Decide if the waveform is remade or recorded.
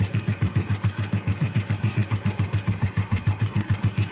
remade